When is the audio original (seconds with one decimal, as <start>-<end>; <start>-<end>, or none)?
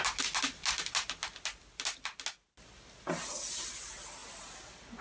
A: 0.0-5.0